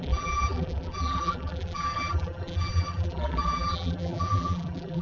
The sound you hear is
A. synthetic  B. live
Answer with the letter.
A